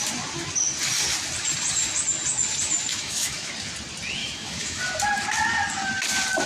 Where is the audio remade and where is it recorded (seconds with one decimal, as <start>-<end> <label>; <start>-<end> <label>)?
0.0-2.9 recorded; 2.9-3.5 remade; 3.5-4.2 recorded; 4.2-4.8 remade; 4.8-6.5 recorded